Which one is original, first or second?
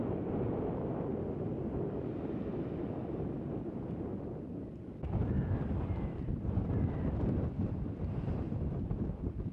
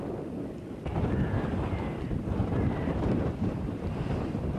first